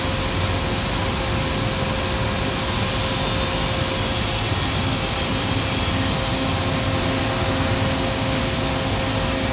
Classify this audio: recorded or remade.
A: recorded